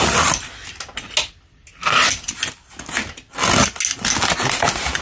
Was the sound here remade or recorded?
recorded